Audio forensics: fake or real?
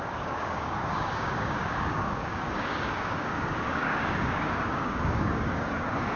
fake